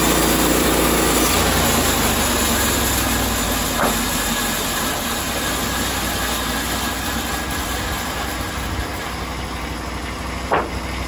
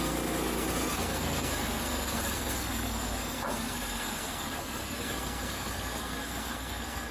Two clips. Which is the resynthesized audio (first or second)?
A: second